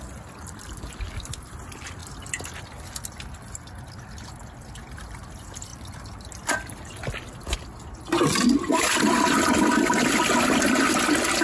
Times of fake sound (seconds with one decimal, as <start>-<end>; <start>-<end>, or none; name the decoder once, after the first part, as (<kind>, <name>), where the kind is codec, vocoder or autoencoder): 5.7-8.0 (vocoder, BigVGAN v2); 8.6-9.8